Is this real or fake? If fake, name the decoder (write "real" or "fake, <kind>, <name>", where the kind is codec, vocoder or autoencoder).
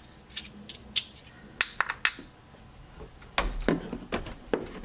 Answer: real